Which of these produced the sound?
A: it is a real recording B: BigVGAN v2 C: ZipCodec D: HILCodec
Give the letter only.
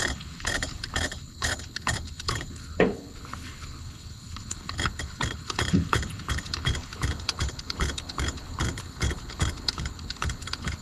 D